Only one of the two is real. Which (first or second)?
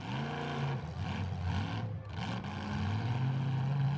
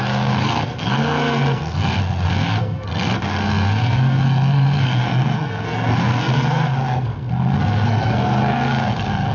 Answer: first